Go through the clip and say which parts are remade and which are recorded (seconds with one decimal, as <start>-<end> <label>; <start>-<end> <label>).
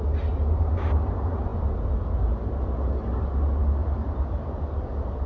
0.0-5.3 recorded